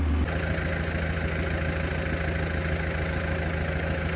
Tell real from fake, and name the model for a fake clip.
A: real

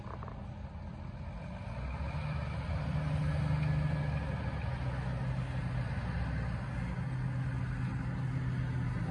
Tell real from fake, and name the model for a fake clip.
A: real